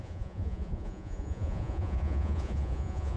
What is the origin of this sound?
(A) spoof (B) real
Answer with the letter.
A